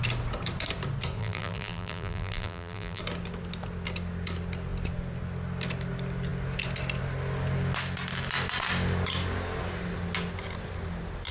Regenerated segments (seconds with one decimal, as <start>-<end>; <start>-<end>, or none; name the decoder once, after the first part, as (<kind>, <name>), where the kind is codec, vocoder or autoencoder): 1.2-3.0 (vocoder, BigVGAN v2)